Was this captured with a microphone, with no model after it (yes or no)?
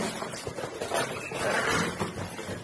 yes